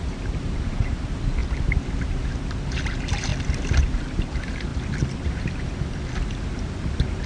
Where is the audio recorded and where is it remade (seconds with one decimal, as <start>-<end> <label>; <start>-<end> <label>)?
0.0-3.3 remade; 3.3-3.8 recorded; 3.8-4.7 remade; 4.7-7.3 recorded